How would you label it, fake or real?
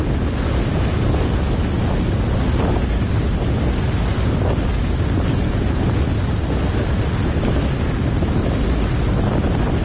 real